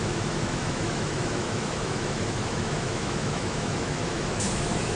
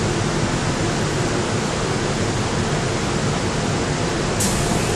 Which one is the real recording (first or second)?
second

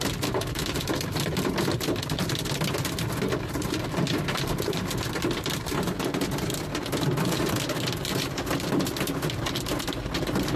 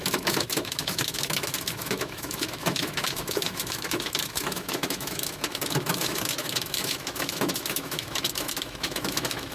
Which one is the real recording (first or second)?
first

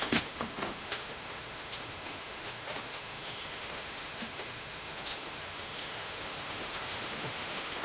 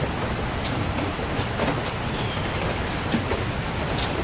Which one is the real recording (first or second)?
second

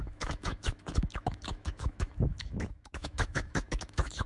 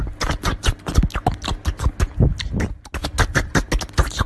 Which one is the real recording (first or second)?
second